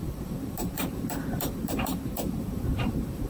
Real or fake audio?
fake